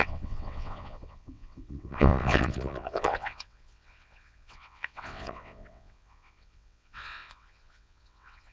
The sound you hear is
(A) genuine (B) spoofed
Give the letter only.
B